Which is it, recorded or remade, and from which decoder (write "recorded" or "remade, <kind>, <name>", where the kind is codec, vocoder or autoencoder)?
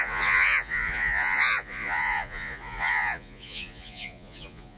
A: remade, vocoder, Vocos